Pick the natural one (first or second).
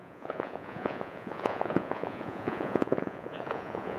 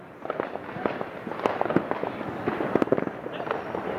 second